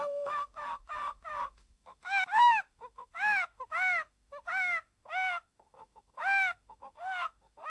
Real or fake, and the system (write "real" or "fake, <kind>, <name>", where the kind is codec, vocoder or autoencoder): fake, autoencoder, DAC-VAE